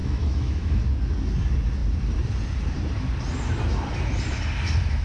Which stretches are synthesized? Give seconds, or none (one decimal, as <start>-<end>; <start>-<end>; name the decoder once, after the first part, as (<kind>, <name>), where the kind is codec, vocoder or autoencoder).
0.0-0.8 (autoencoder, DAC-VAE)